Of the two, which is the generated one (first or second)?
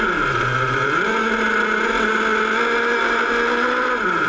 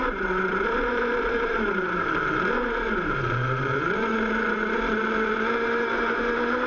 second